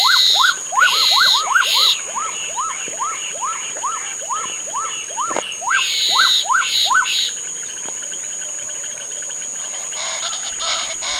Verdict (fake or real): fake